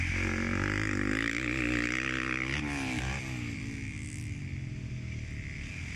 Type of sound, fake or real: real